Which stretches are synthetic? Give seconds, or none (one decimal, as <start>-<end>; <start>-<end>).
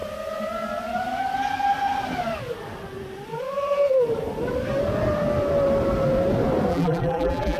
6.7-7.6